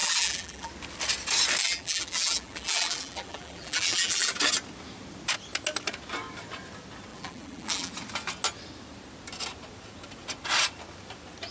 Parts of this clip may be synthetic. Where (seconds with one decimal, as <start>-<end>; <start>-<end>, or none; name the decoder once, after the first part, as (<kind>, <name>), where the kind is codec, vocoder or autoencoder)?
0.0-0.7 (vocoder, BigVGAN v2); 1.6-4.3; 7.1-7.9